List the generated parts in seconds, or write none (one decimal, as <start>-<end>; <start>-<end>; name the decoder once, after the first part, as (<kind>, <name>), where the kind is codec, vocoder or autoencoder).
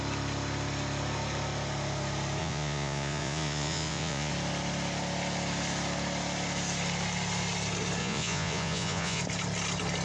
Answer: 2.4-4.3 (vocoder, Vocos); 8.0-9.2